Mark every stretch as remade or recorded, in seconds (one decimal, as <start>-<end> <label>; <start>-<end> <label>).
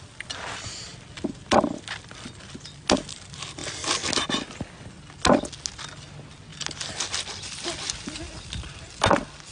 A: 0.0-0.9 recorded; 0.9-1.8 remade; 1.8-3.6 recorded; 3.6-4.1 remade; 4.1-6.5 recorded; 6.5-8.8 remade; 8.8-9.5 recorded